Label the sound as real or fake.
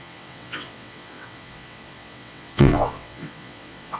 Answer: fake